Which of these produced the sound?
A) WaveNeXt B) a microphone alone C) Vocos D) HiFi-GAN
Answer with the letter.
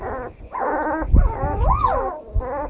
B